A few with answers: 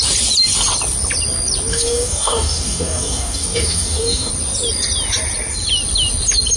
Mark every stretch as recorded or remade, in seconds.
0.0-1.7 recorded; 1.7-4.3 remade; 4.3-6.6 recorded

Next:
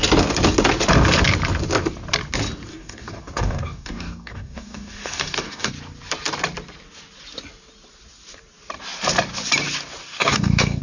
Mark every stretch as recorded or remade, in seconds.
0.0-2.7 recorded; 2.7-5.7 remade; 5.7-10.0 recorded; 10.0-10.8 remade

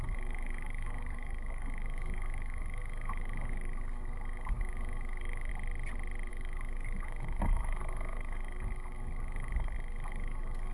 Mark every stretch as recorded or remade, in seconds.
0.0-5.5 remade; 5.5-6.3 recorded; 6.3-10.7 remade

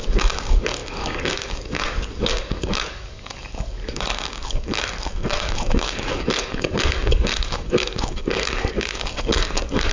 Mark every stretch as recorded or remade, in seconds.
0.0-9.9 remade